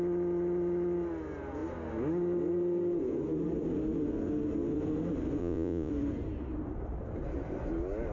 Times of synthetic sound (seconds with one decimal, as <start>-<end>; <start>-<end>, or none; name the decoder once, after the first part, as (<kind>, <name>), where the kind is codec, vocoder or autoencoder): 5.4-5.9 (vocoder, Vocos)